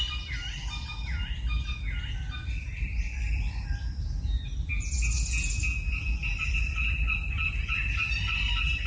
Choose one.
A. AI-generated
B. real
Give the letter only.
B